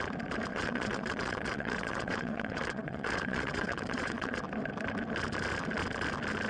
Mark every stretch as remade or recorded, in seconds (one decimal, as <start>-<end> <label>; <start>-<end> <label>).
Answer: 0.0-0.5 recorded; 0.5-4.4 remade; 4.4-6.5 recorded